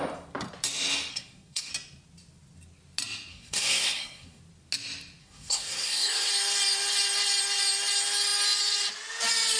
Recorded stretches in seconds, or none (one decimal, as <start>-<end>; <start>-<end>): 0.0-1.1; 1.7-3.3; 4.4-5.2; 6.3-9.6